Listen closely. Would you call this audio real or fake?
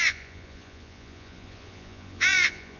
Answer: fake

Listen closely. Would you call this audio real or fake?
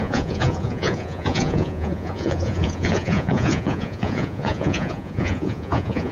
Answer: fake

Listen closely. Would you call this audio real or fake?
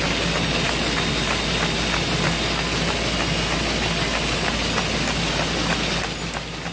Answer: real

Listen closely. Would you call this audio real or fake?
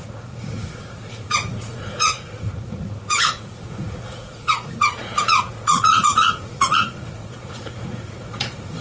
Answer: fake